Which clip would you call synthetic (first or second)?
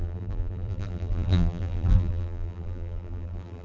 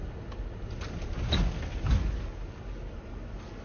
first